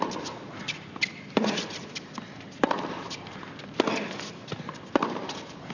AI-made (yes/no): no